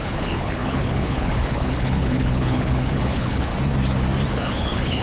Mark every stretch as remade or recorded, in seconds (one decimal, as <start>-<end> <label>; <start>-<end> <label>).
0.0-3.5 remade; 3.5-4.3 recorded; 4.3-5.0 remade